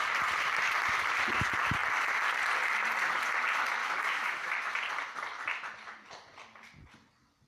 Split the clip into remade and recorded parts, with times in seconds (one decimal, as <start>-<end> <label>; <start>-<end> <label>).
0.0-3.8 recorded; 3.8-4.7 remade; 4.7-7.5 recorded